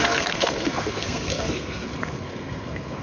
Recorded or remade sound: remade